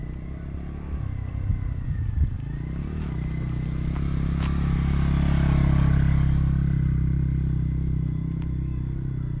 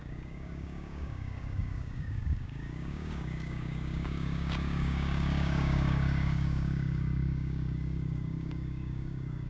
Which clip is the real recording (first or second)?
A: first